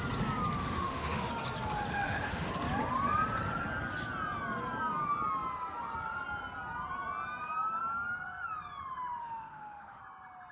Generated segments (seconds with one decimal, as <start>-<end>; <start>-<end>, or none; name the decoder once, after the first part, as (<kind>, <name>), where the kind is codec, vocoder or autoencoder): 0.6-1.3 (autoencoder, DAC-VAE); 1.9-2.5; 9.2-10.0